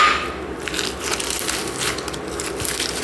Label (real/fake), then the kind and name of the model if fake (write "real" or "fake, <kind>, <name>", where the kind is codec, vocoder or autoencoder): real